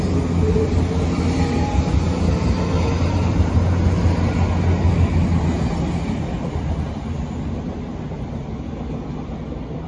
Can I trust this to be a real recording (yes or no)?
yes